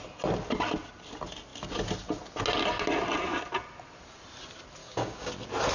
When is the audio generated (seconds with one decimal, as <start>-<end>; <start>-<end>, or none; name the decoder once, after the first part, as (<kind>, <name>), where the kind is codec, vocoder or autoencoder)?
4.8-5.3 (codec, DAC)